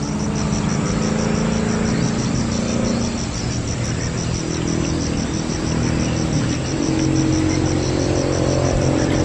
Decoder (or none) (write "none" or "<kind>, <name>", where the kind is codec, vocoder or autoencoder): none